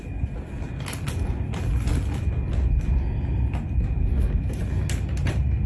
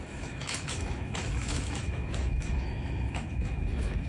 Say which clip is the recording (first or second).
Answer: first